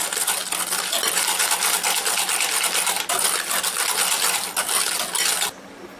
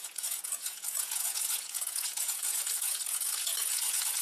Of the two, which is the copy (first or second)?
second